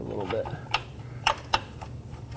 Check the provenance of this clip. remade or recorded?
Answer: remade